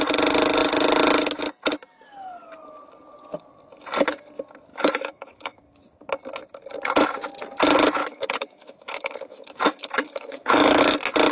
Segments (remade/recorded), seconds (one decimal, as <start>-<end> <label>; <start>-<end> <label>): 0.0-4.7 recorded; 4.7-5.6 remade; 5.6-8.0 recorded; 8.0-10.8 remade; 10.8-11.3 recorded